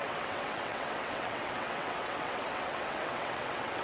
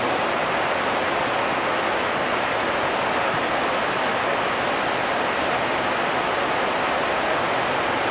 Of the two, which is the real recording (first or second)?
second